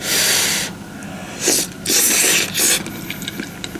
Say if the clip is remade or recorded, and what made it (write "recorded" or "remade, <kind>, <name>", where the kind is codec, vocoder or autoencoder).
recorded